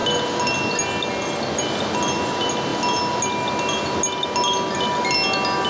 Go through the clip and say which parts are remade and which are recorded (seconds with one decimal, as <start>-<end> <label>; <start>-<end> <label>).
0.0-5.7 recorded